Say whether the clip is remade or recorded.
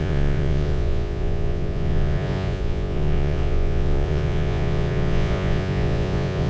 remade